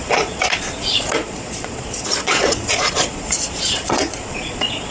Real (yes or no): no